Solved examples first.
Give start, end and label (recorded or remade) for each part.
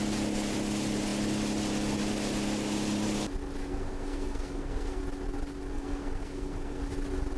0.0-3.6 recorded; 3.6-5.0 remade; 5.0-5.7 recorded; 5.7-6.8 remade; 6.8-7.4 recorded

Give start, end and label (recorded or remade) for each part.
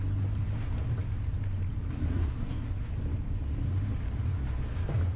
0.0-2.0 recorded; 2.0-2.9 remade; 2.9-5.2 recorded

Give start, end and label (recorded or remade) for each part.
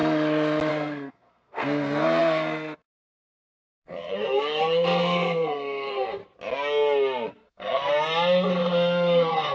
0.0-0.7 recorded; 0.7-6.2 remade; 6.2-7.3 recorded; 7.3-7.9 remade; 7.9-8.5 recorded; 8.5-9.5 remade